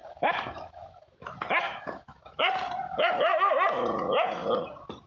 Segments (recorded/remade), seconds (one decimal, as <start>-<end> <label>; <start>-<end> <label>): 0.0-2.4 remade; 2.4-5.1 recorded